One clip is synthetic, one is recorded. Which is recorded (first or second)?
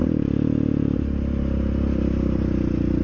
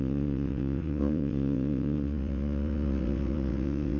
first